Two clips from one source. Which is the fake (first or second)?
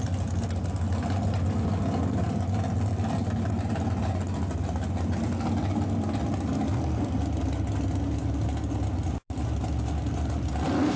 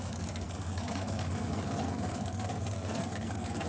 second